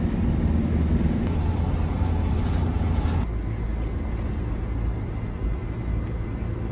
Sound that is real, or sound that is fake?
real